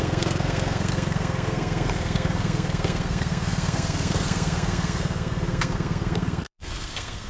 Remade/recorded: remade